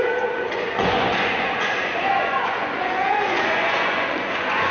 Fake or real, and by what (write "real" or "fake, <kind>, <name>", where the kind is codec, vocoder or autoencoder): fake, vocoder, Vocos